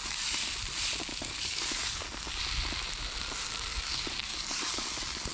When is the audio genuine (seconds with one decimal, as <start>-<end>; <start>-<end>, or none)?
0.5-1.1; 2.4-3.7